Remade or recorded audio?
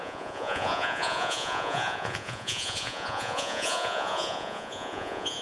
remade